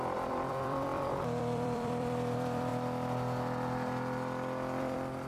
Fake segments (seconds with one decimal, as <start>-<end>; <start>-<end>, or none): 0.0-2.7; 4.8-5.3